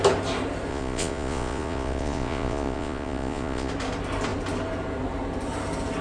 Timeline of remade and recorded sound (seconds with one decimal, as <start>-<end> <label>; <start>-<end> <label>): 0.0-0.7 recorded; 0.7-3.7 remade; 3.7-6.0 recorded